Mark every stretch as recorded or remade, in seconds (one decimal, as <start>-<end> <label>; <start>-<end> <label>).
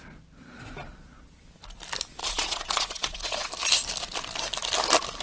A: 0.0-2.2 recorded; 2.2-3.5 remade; 3.5-5.2 recorded